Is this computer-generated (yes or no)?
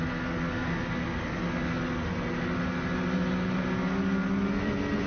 no